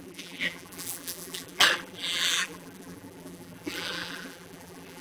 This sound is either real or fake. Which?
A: fake